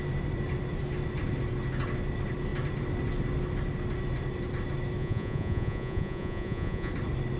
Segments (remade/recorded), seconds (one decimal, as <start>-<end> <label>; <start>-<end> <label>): 0.0-5.0 recorded; 5.0-6.9 remade; 6.9-7.4 recorded

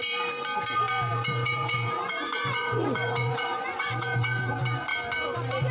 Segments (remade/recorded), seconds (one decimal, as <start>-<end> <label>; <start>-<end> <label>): 0.0-1.1 recorded; 1.1-4.5 remade; 4.5-5.7 recorded

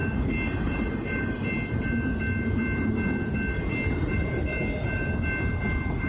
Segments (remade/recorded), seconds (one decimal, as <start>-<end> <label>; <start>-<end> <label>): 0.0-6.1 recorded